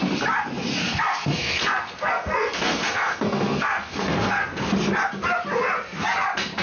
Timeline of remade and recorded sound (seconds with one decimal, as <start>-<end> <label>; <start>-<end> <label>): 0.0-0.8 recorded; 0.8-4.7 remade; 4.7-6.6 recorded